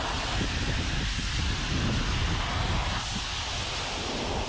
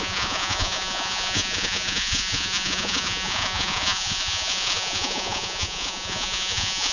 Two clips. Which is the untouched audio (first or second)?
first